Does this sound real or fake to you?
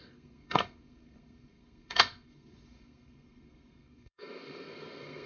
fake